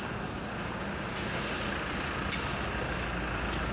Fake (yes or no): no